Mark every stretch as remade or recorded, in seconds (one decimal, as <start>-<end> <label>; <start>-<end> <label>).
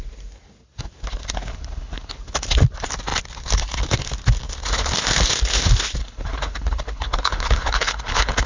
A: 0.0-1.5 recorded; 1.5-2.2 remade; 2.2-6.0 recorded; 6.0-8.5 remade